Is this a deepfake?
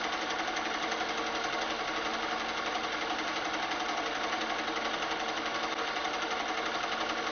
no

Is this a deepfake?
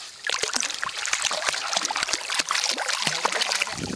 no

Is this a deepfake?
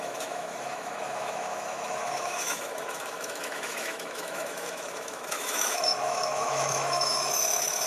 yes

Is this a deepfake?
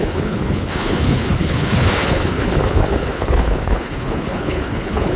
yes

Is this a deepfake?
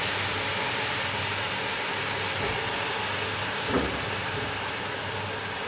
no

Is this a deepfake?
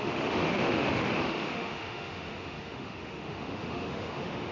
yes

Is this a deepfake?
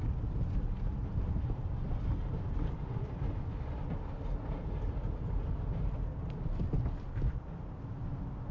no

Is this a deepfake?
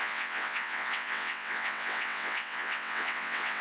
yes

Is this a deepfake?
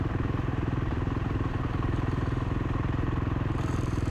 yes